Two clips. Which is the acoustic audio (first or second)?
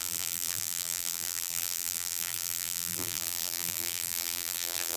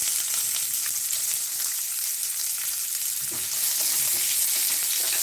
second